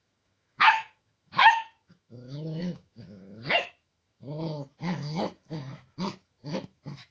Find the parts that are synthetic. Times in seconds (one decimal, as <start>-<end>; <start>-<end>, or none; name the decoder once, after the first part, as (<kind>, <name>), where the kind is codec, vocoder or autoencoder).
0.0-7.1 (autoencoder, DAC-VAE)